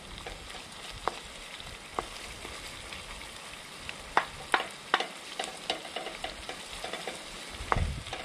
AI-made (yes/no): no